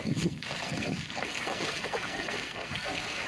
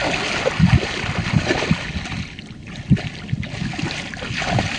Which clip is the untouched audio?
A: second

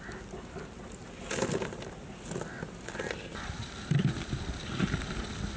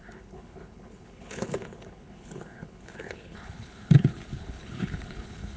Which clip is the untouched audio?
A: first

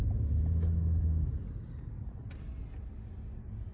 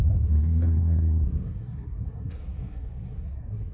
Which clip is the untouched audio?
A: first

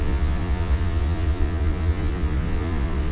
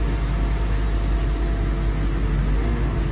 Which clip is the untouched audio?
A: second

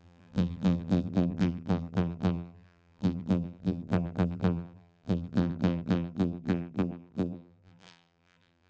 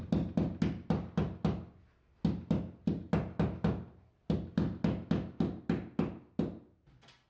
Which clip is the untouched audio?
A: second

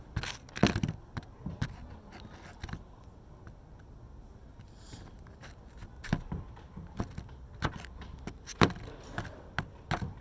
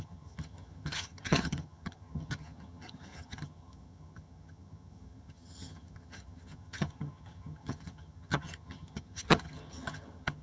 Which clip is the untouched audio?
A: first